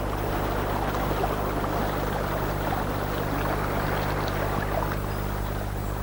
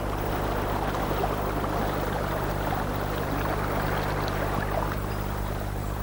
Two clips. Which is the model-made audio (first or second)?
second